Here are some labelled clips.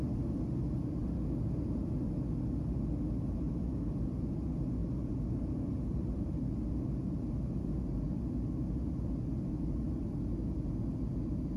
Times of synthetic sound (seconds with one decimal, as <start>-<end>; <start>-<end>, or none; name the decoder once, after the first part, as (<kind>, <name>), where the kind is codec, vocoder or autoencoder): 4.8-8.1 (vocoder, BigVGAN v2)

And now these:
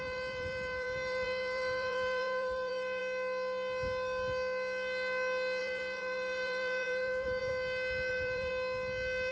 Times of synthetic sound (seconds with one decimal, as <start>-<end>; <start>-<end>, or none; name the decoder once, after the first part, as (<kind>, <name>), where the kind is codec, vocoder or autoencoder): 0.0-3.0 (vocoder, BigVGAN v2); 5.6-7.5; 8.1-8.5

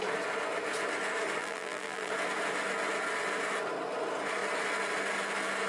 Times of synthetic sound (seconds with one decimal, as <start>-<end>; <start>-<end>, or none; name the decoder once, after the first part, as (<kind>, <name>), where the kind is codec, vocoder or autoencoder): 1.4-2.1 (vocoder, BigVGAN v2)